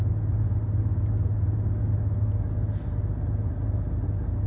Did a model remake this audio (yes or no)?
no